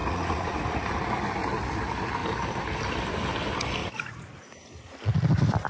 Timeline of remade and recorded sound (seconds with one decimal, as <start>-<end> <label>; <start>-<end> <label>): 0.0-0.9 remade; 0.9-3.8 recorded; 3.8-4.3 remade; 4.3-5.7 recorded